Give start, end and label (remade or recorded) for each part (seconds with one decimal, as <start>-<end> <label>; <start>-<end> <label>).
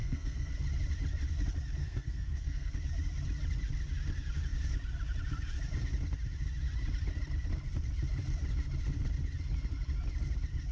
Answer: 0.0-0.5 remade; 0.5-1.8 recorded; 1.8-2.7 remade; 2.7-10.7 recorded